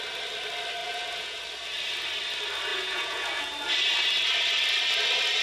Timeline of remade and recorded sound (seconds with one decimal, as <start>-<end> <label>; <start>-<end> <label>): 0.0-0.8 recorded; 0.8-1.4 remade; 1.4-2.7 recorded; 2.7-3.5 remade; 3.5-5.4 recorded